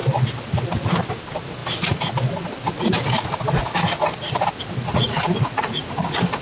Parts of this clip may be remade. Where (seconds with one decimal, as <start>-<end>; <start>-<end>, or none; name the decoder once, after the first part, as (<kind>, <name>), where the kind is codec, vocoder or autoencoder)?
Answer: 4.9-6.4 (vocoder, Vocos)